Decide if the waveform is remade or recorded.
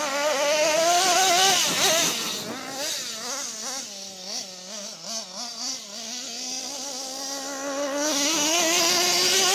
recorded